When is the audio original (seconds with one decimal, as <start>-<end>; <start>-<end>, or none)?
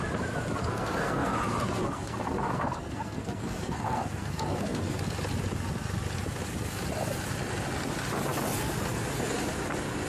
0.0-0.6; 5.0-10.1